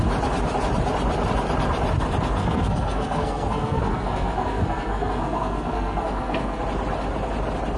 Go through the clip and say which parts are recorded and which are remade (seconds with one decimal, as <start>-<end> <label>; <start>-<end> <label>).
0.0-2.4 recorded; 2.4-6.6 remade; 6.6-7.8 recorded